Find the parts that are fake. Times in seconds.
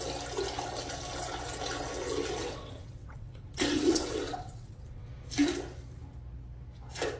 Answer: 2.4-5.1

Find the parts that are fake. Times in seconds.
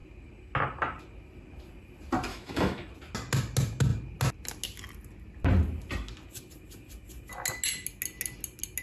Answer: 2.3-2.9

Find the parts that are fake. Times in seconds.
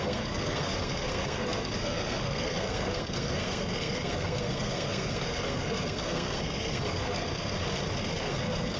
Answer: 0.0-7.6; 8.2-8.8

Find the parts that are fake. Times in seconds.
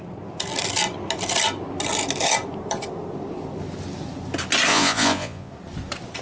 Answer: 4.7-5.5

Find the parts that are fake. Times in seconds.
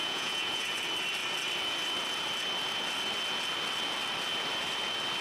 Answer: 0.0-0.7